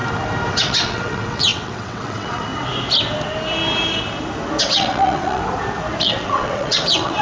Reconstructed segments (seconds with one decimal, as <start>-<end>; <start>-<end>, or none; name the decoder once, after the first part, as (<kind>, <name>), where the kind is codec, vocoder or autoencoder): 0.5-2.5 (vocoder, WaveNeXt); 4.6-5.4; 6.0-7.2